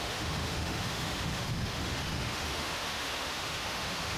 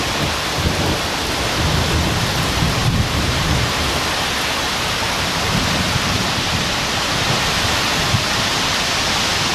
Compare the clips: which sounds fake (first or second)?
first